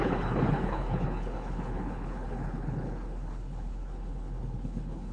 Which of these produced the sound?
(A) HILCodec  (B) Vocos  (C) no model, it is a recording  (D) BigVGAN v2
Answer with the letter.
A